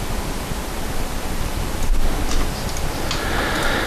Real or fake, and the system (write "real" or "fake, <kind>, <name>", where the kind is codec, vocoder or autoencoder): real